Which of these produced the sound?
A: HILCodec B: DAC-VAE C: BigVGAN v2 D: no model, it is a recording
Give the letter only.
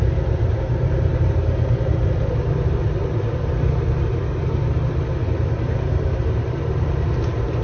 C